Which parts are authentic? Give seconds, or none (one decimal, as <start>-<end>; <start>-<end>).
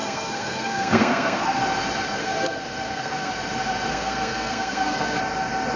1.6-2.2; 3.3-3.9; 5.2-5.8